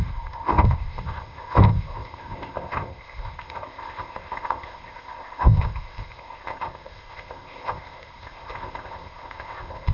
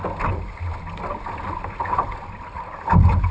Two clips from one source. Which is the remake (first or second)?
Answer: first